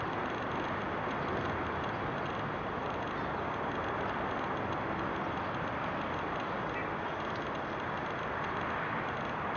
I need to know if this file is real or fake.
real